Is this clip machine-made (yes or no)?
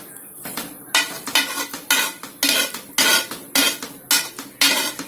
no